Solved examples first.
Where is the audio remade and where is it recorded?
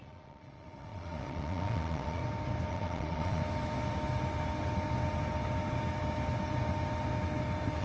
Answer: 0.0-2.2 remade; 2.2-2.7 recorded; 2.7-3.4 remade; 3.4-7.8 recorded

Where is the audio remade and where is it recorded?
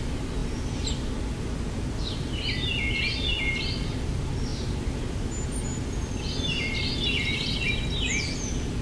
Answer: 0.0-8.8 recorded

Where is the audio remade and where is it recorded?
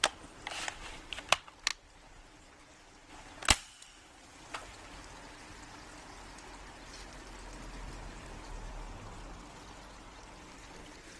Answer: 0.0-11.2 recorded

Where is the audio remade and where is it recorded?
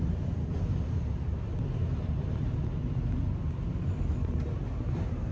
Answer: 0.0-5.3 recorded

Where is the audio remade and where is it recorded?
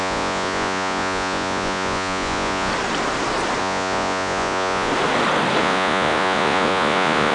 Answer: 0.0-2.7 remade; 2.7-3.6 recorded; 3.6-4.9 remade; 4.9-5.6 recorded; 5.6-7.3 remade